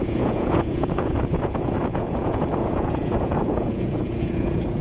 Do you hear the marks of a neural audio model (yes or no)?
yes